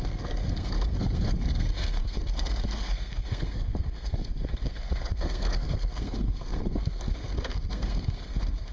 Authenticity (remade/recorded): remade